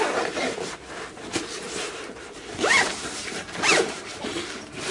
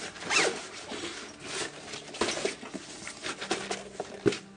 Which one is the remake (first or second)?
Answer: first